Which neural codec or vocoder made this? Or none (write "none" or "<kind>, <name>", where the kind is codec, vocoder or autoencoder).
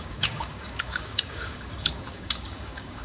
codec, DAC